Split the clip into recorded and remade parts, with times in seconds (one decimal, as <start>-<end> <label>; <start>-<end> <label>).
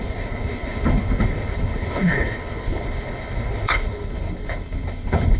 0.0-5.4 remade